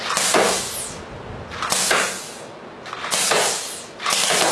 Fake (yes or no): no